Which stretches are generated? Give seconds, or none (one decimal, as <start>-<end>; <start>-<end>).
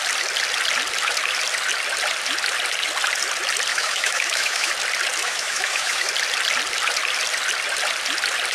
3.7-4.7; 5.2-6.1